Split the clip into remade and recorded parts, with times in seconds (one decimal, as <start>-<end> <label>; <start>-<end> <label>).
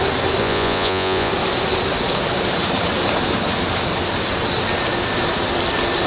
0.0-0.4 recorded; 0.4-1.3 remade; 1.3-6.1 recorded